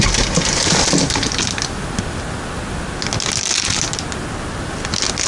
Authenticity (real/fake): real